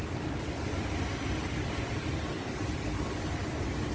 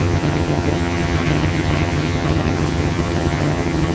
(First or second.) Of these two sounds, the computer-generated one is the second